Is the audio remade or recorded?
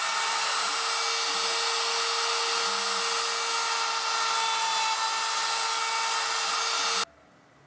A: recorded